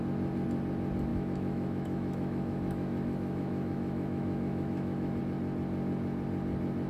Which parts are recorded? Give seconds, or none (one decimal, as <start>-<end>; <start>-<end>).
0.0-1.1; 5.2-6.9